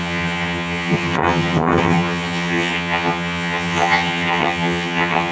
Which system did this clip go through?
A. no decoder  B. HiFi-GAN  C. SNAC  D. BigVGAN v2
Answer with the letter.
B